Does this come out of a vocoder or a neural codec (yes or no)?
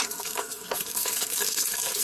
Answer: yes